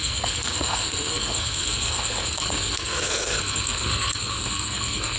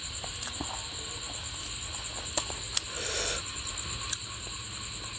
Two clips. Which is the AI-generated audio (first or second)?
first